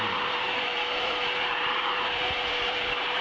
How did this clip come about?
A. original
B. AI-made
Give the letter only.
B